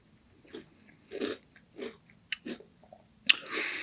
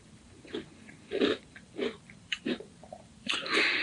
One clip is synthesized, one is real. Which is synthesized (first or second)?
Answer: second